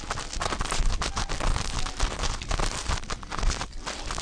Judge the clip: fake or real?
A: real